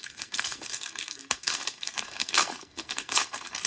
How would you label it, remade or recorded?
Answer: remade